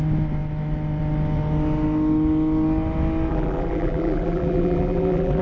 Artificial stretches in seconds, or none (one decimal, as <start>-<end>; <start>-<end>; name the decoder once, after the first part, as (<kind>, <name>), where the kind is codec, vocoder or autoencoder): 3.3-5.4 (vocoder, BigVGAN v2)